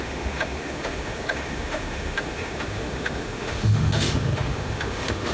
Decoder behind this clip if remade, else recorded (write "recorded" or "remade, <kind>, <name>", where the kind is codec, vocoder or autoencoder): remade, autoencoder, DAC-VAE